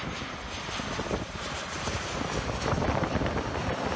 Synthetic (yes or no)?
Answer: no